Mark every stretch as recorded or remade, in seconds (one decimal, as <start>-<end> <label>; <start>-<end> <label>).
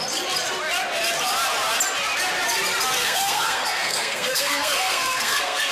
0.0-3.0 recorded; 3.0-5.7 remade